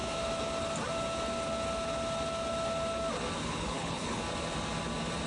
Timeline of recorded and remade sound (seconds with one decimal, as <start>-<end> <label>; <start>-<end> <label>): 0.0-3.4 recorded; 3.4-4.2 remade; 4.2-5.3 recorded